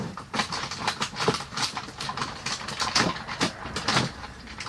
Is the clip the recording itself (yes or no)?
no